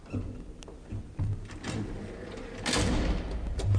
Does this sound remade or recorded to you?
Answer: recorded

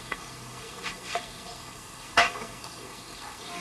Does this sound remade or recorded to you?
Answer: remade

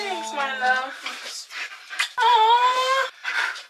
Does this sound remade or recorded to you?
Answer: remade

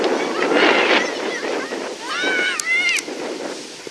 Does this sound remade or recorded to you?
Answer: recorded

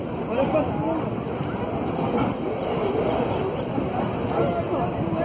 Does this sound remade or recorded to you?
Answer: recorded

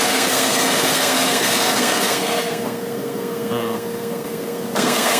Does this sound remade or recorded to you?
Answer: remade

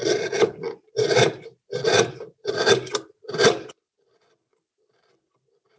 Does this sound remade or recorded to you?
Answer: remade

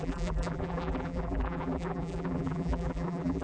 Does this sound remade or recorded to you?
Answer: remade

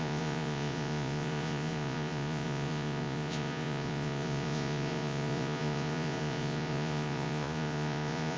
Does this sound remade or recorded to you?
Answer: remade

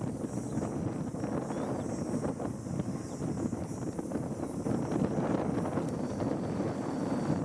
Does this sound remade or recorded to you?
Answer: recorded